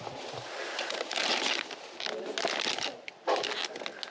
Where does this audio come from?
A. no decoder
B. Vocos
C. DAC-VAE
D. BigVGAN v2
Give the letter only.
A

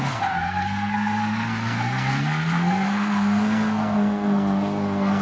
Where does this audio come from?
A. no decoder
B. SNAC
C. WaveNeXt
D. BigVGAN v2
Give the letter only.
B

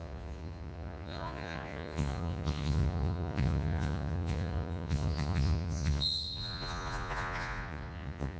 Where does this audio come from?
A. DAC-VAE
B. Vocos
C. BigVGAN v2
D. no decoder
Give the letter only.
B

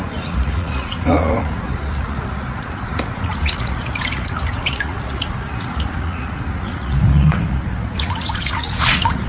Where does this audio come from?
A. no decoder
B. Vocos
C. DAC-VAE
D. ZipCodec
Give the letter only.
B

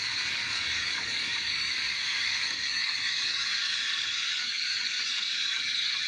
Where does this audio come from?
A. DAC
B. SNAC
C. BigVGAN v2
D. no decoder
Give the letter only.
A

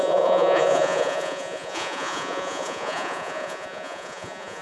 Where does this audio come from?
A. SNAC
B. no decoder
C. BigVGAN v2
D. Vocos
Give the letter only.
D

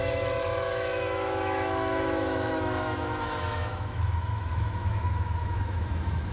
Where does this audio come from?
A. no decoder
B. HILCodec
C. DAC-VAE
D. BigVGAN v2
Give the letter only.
C